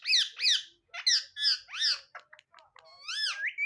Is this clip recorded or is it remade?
recorded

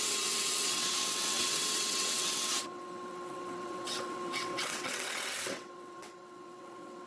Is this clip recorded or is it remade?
remade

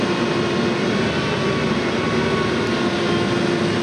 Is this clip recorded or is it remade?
recorded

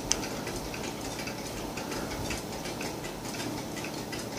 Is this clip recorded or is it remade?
recorded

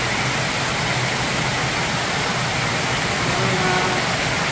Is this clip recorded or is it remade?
recorded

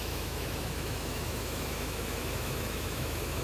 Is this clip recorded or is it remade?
remade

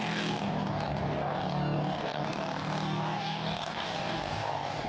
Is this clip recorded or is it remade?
remade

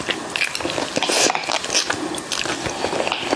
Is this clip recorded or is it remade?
recorded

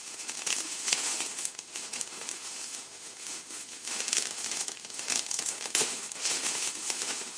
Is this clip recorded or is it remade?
remade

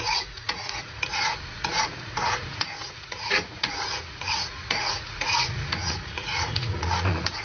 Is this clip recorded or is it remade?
remade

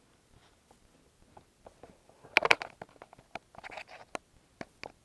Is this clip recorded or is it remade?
recorded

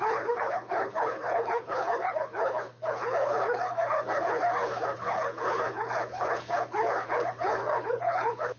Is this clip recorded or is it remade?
remade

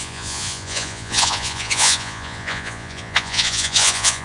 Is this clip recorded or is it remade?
remade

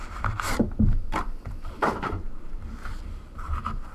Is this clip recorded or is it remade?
remade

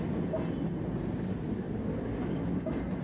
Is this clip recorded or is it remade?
recorded